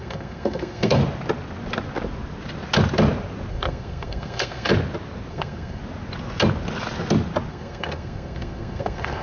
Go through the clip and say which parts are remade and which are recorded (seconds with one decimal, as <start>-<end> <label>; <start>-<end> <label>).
0.0-1.0 remade; 1.0-3.5 recorded; 3.5-4.7 remade; 4.7-5.3 recorded; 5.3-5.8 remade; 5.8-7.5 recorded; 7.5-9.2 remade